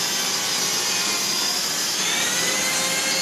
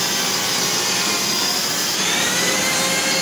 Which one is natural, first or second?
first